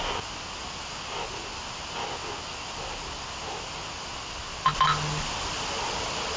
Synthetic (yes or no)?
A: no